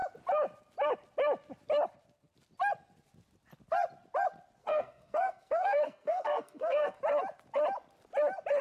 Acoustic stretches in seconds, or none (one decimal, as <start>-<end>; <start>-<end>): 0.0-4.6; 7.0-8.6